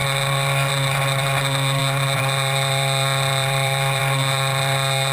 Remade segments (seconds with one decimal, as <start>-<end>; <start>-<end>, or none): 0.0-5.1